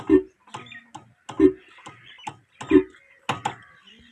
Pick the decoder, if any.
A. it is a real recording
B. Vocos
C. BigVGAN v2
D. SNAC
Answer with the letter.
A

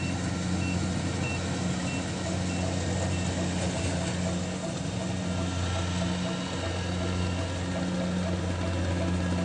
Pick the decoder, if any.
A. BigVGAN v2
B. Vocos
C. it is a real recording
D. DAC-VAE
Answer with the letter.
C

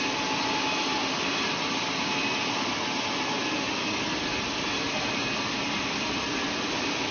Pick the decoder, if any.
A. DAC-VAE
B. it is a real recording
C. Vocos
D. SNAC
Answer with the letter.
B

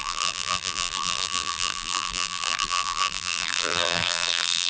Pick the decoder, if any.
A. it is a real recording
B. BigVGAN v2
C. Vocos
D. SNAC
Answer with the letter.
B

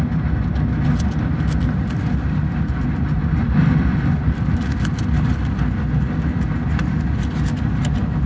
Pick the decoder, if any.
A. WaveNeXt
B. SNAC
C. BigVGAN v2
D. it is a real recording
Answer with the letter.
D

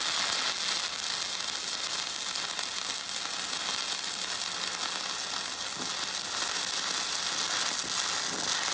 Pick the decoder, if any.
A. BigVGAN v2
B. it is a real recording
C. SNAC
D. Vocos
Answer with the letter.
B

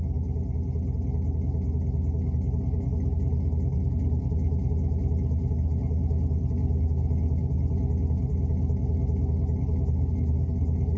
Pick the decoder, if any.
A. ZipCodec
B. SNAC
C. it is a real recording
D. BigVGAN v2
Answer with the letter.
C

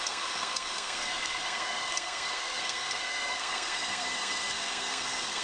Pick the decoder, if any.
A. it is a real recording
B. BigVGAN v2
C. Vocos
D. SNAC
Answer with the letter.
D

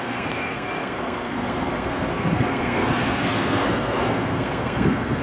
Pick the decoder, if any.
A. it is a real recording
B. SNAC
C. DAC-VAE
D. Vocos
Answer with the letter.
B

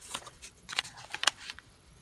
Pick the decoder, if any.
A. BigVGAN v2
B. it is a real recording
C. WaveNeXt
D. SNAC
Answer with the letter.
C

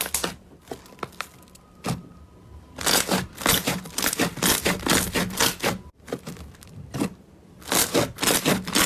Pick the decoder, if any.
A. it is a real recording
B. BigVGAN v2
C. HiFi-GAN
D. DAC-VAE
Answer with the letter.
A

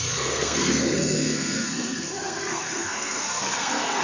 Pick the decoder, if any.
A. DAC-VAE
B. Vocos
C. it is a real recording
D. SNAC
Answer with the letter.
D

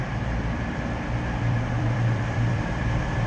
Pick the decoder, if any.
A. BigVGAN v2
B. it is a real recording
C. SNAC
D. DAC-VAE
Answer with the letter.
A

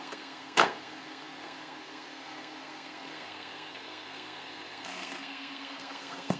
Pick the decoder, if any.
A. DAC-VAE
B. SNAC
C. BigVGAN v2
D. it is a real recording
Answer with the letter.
B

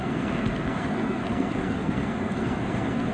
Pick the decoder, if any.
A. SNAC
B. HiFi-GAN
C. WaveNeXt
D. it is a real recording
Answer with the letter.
A